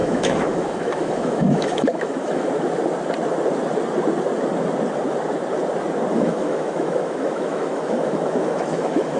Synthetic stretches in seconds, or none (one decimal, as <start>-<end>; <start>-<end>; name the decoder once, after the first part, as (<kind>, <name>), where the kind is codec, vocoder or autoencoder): 0.0-2.5 (autoencoder, DAC-VAE); 6.1-9.2